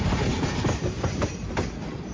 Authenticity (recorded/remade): recorded